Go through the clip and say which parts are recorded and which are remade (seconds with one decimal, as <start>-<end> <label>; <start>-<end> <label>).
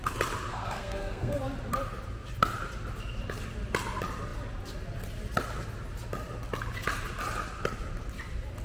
0.0-0.5 recorded; 0.5-1.4 remade; 1.4-8.6 recorded